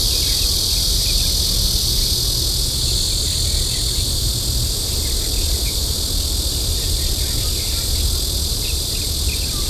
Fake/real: real